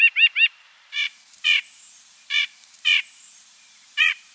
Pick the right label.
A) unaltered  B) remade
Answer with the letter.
B